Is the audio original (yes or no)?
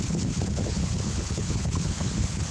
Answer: no